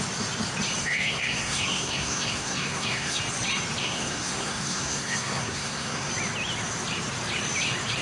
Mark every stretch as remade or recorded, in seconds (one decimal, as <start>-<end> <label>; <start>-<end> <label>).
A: 0.0-0.8 recorded; 0.8-3.2 remade; 3.2-3.8 recorded; 3.8-6.1 remade; 6.1-8.0 recorded